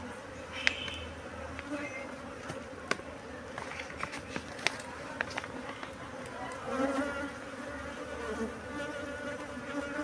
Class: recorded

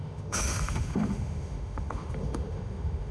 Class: remade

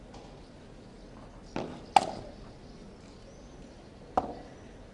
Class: recorded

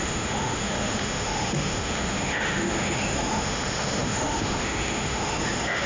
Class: remade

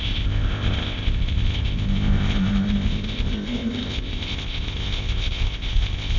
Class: remade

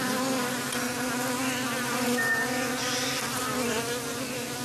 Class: recorded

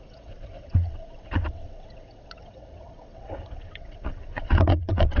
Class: remade